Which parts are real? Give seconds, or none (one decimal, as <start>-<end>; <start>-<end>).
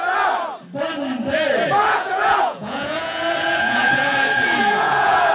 0.0-1.8